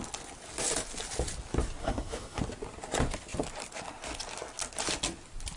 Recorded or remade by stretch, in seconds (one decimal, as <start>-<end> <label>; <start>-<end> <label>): 0.0-1.8 recorded; 1.8-2.4 remade; 2.4-5.6 recorded